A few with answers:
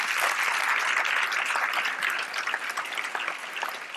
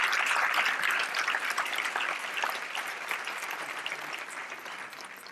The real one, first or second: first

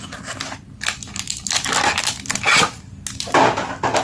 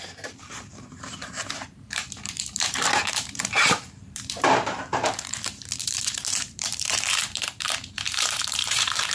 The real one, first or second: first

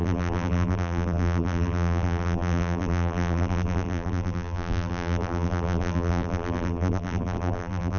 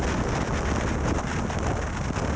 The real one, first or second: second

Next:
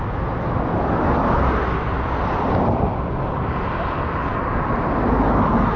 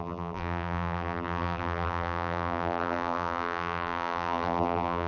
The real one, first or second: first